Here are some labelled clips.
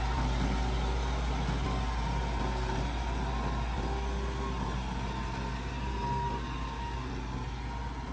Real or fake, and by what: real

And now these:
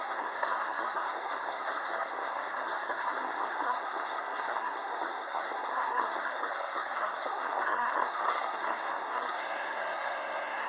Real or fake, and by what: fake, codec, SNAC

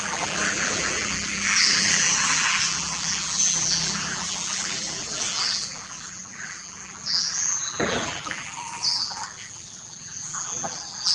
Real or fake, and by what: fake, vocoder, BigVGAN v2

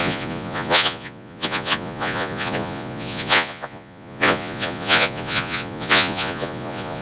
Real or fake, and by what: fake, vocoder, Vocos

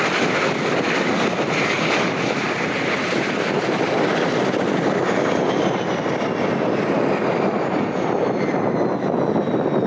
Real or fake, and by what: real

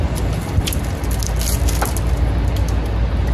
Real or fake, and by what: real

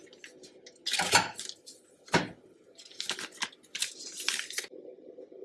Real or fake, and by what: real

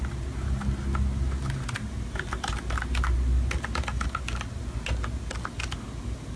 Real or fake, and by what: real